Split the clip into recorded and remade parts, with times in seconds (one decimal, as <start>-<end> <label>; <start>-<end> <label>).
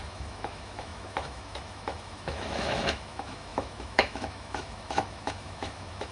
0.0-6.1 remade